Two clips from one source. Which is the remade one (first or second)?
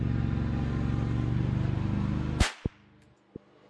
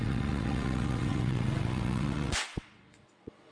second